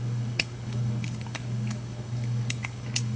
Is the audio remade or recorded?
remade